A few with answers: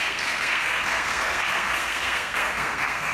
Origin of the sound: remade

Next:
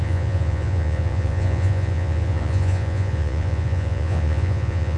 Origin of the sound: remade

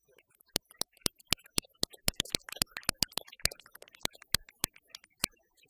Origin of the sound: remade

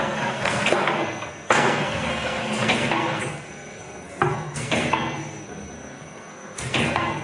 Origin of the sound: remade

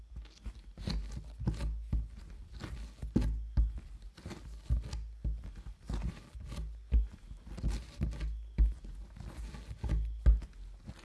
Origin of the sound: recorded